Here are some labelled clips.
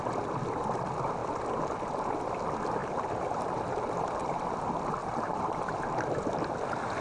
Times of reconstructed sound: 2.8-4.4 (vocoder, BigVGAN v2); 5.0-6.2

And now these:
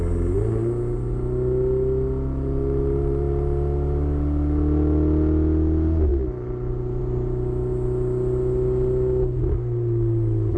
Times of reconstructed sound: none

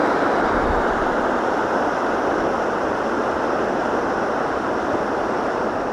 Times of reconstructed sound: none